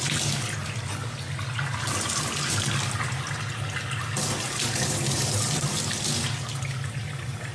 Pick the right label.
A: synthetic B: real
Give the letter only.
B